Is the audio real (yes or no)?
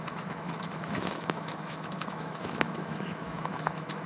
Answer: no